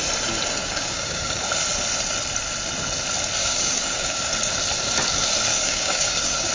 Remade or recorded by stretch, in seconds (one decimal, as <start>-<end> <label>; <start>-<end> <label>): 0.0-0.6 recorded; 0.6-1.4 remade; 1.4-3.4 recorded; 3.4-4.2 remade; 4.2-5.5 recorded; 5.5-6.5 remade